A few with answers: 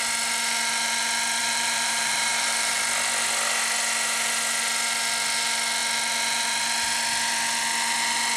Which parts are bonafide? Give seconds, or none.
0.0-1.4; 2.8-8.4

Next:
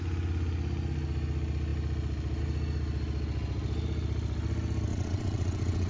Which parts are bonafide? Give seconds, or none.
0.0-4.9